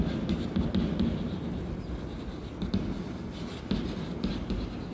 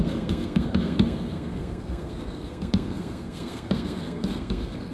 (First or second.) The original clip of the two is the first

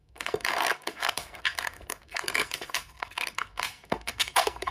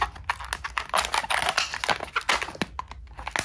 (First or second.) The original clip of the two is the second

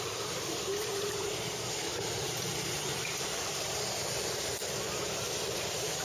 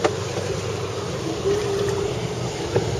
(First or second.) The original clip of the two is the second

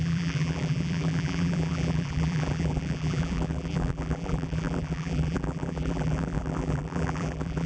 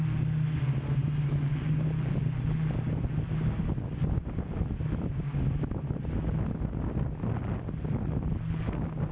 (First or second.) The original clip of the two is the second